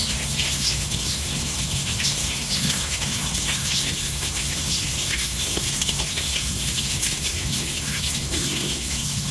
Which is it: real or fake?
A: fake